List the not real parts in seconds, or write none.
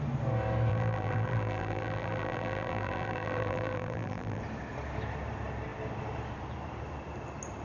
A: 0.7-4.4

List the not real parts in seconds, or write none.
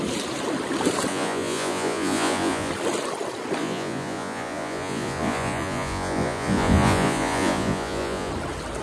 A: 1.1-2.7; 3.6-8.3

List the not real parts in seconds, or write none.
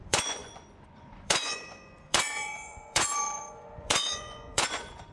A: 0.0-5.1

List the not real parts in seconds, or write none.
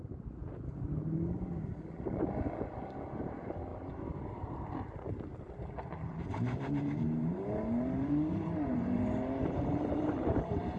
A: 0.0-0.4; 3.2-3.7; 5.9-10.8